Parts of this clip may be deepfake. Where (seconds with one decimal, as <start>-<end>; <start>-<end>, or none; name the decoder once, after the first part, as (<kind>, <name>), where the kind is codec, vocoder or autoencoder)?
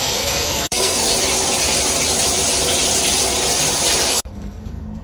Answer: 0.0-1.1 (codec, SNAC); 4.1-5.0